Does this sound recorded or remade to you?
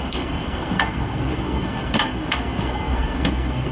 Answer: remade